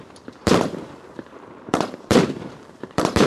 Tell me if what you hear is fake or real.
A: fake